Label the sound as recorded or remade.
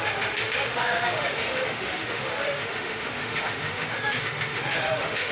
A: remade